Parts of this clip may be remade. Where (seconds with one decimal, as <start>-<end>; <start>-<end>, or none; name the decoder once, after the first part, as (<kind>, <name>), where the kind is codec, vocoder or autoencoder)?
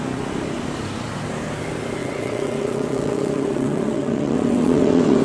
2.0-5.2 (vocoder, WaveNeXt)